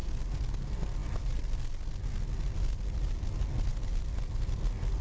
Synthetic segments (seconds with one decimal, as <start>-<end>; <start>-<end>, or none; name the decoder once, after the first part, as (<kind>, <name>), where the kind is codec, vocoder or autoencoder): none